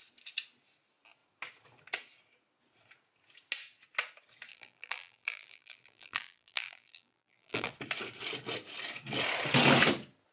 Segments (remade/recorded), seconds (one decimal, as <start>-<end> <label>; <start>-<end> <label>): 0.0-4.5 recorded; 4.5-7.7 remade; 7.7-10.3 recorded